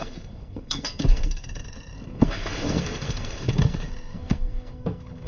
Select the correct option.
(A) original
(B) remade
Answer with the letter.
B